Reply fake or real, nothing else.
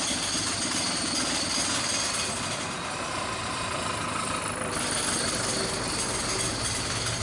real